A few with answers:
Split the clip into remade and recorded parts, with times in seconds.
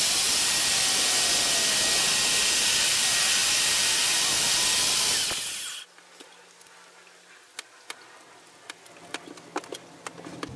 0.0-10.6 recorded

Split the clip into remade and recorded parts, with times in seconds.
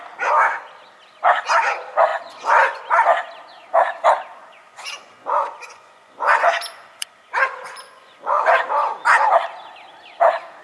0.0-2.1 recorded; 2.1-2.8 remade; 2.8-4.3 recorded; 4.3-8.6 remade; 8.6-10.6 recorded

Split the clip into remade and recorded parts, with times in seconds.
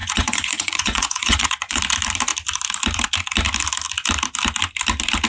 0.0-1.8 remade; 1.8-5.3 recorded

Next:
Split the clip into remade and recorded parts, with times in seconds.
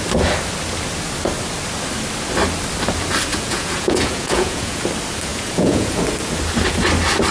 0.0-3.3 recorded; 3.3-4.8 remade; 4.8-5.3 recorded; 5.3-6.0 remade; 6.0-7.3 recorded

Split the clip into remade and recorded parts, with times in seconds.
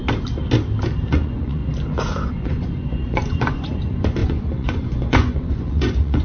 0.0-1.1 recorded; 1.1-1.6 remade; 1.6-2.3 recorded; 2.3-6.2 remade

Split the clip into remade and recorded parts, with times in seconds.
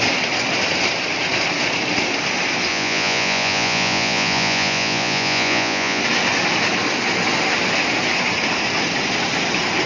0.0-2.7 recorded; 2.7-6.0 remade; 6.0-9.9 recorded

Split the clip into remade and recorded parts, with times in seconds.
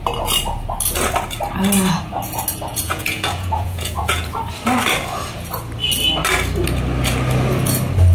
0.0-2.7 recorded; 2.7-4.4 remade; 4.4-8.1 recorded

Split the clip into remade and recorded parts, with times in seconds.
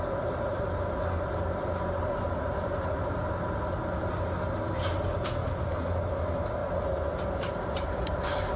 0.0-8.6 recorded